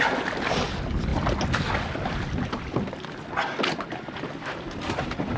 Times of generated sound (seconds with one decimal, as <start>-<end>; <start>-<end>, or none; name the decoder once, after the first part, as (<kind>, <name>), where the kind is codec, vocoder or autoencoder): none